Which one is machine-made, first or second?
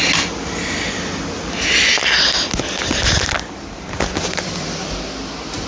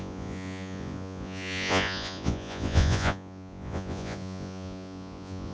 second